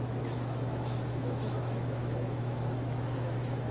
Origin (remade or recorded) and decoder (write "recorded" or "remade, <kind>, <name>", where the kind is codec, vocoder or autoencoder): remade, autoencoder, DAC-VAE